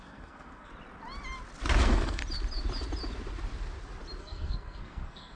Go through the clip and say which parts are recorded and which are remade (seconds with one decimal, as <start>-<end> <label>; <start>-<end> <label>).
0.0-0.7 remade; 0.7-1.8 recorded; 1.8-2.2 remade; 2.2-4.2 recorded; 4.2-5.4 remade